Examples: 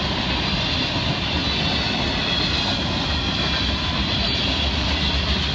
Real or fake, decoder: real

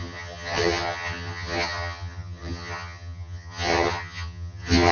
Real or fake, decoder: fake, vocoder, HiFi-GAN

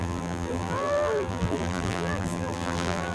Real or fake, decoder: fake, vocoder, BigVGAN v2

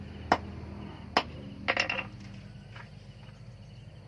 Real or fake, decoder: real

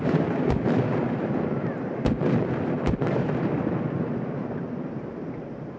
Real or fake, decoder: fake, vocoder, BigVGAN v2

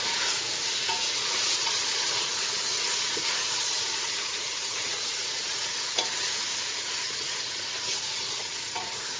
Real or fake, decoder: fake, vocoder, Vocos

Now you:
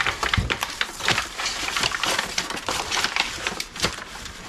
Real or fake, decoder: fake, vocoder, BigVGAN v2